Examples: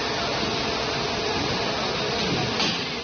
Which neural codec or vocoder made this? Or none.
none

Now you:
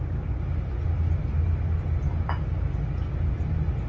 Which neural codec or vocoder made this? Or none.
none